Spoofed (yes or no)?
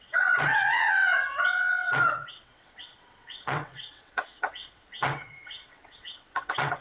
yes